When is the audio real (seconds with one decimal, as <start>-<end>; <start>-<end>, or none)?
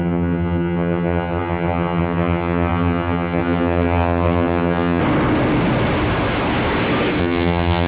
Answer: 5.0-7.2